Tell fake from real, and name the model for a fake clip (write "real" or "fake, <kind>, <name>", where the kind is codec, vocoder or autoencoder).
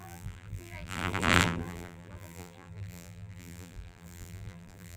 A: fake, vocoder, BigVGAN v2